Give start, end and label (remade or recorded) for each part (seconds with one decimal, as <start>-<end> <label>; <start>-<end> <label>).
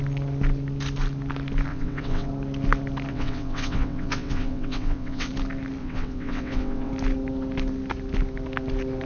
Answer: 0.0-1.7 recorded; 1.7-2.3 remade; 2.3-3.1 recorded; 3.1-5.3 remade; 5.3-5.8 recorded; 5.8-6.9 remade; 6.9-9.1 recorded